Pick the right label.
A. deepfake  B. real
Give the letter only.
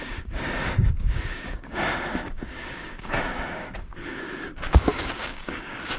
A